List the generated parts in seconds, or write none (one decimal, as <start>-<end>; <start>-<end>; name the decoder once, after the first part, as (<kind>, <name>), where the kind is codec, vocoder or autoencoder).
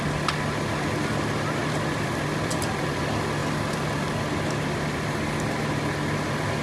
1.6-3.0 (vocoder, BigVGAN v2)